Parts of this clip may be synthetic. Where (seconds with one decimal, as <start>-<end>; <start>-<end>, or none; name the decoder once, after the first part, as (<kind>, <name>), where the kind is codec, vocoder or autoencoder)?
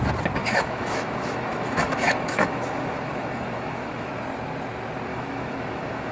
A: 0.4-4.1 (autoencoder, DAC-VAE); 5.1-6.1